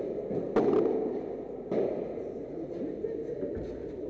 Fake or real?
real